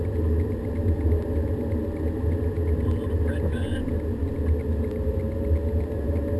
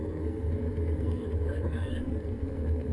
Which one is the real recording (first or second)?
first